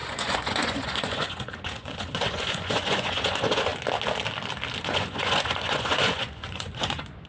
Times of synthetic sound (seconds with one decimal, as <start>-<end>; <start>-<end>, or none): 0.0-3.7; 4.8-7.3